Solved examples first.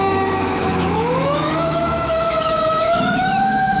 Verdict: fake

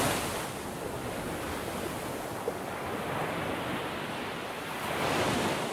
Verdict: real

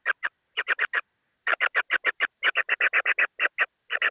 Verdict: real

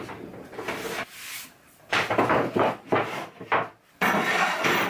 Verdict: fake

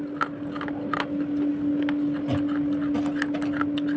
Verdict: real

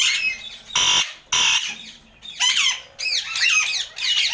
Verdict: real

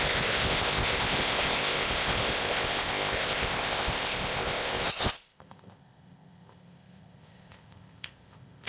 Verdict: fake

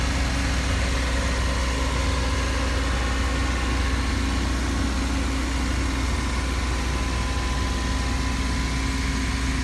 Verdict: real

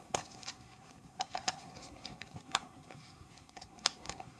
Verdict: fake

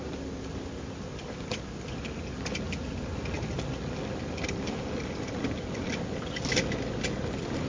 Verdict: real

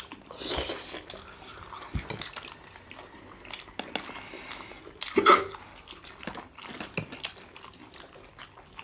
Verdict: real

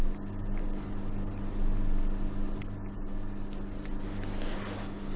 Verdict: real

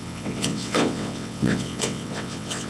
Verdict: fake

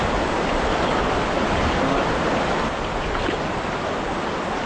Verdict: real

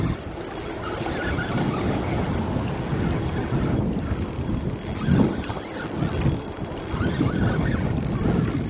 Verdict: real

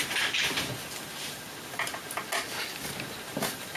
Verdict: real